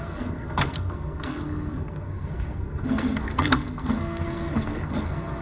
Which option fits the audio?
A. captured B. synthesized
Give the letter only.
B